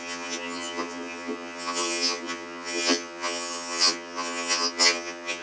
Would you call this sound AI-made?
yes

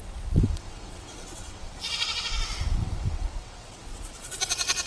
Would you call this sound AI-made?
yes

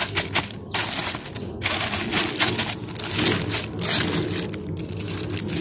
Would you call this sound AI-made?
no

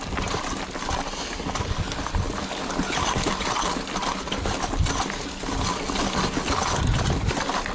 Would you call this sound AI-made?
no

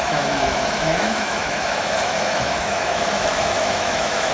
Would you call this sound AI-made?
yes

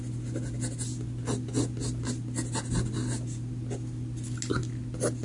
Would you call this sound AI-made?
no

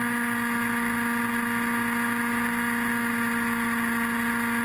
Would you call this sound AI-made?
no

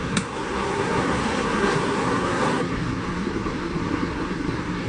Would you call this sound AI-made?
yes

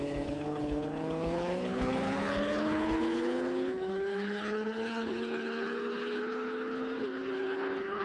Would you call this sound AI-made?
yes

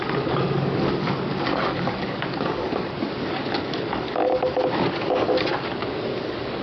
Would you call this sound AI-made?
yes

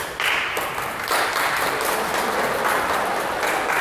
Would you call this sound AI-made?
no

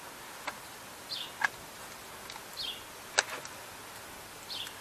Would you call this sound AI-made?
no